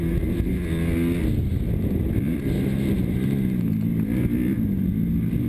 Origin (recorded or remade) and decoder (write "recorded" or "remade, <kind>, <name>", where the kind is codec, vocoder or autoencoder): recorded